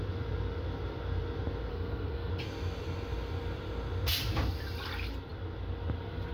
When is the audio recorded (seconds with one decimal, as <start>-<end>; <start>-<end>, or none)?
0.0-1.7; 2.3-6.3